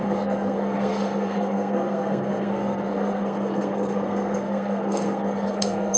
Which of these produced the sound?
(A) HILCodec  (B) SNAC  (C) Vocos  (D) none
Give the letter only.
B